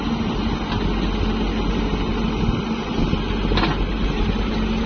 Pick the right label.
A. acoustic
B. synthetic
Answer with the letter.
A